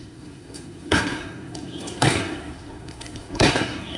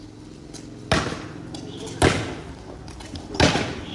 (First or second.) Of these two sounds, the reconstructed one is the first